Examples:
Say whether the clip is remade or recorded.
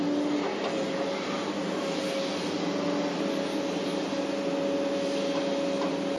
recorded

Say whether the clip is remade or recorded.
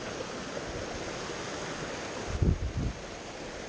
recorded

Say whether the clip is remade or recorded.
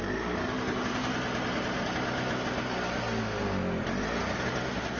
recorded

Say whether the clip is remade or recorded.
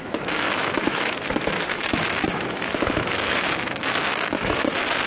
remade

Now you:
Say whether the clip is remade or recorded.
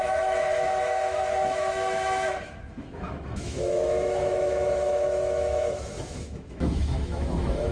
remade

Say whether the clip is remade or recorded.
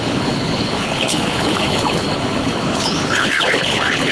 remade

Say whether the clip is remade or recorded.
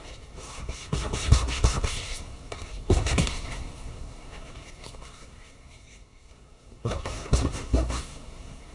remade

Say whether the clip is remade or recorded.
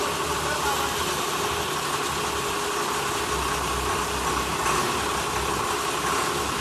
recorded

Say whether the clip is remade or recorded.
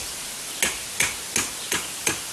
recorded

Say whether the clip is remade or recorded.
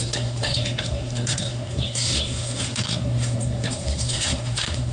remade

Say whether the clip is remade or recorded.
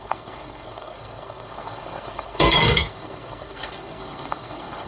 remade